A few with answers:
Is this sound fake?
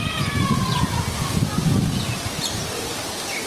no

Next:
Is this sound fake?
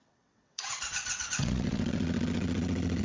yes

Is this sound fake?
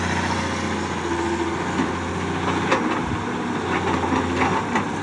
no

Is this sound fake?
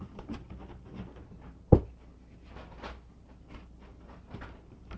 no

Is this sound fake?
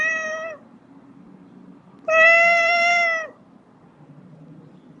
yes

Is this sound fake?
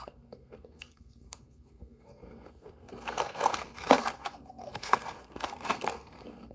yes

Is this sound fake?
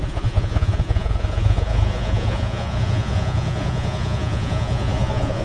yes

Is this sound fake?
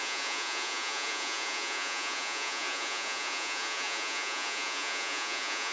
yes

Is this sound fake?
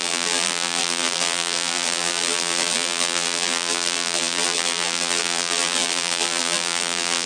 yes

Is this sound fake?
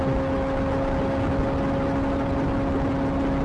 no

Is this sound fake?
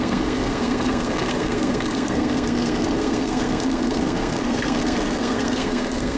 yes